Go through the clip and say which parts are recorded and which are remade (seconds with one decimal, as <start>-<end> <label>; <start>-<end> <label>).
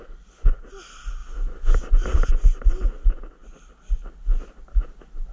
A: 0.0-5.3 recorded